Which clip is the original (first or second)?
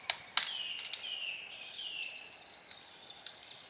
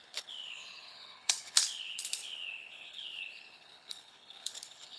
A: first